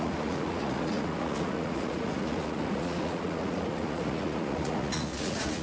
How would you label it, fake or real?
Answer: fake